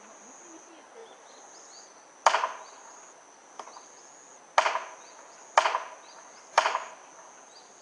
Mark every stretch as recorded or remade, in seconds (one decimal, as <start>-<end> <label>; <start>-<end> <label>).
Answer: 0.0-7.8 recorded